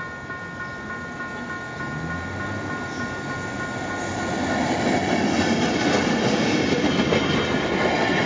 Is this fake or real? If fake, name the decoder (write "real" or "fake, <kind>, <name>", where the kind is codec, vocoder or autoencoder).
real